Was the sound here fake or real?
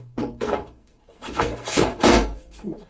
fake